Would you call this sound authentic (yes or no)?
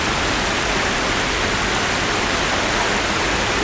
yes